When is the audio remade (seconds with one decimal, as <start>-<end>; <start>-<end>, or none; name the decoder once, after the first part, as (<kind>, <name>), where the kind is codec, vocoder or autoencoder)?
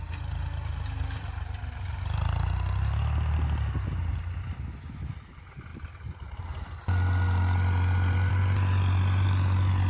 none